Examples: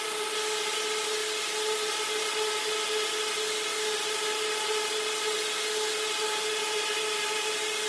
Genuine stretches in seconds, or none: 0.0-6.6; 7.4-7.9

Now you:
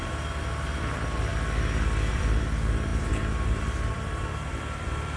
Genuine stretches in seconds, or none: 1.3-2.1